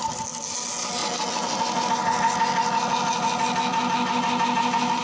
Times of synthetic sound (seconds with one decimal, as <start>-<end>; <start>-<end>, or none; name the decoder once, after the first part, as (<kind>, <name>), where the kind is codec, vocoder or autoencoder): none